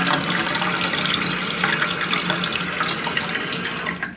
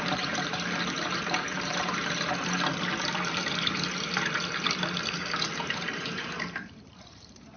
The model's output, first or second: second